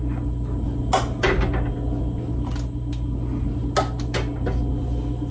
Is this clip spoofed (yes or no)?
no